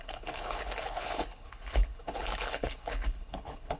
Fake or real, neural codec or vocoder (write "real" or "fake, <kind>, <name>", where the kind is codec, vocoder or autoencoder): fake, codec, HILCodec